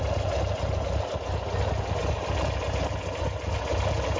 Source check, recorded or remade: recorded